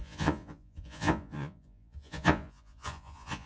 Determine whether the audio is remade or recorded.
remade